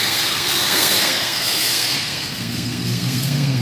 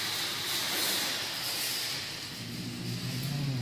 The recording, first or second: second